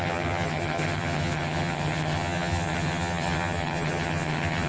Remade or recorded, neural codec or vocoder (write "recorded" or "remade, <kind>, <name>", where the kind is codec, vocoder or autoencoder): remade, vocoder, HiFi-GAN